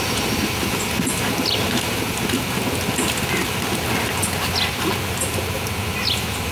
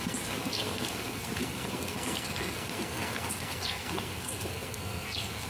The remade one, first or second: second